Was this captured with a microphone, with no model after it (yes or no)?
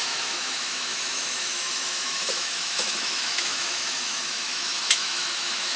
no